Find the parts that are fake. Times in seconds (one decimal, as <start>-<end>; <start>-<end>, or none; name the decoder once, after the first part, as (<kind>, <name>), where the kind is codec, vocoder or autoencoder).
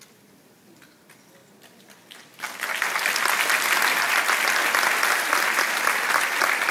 none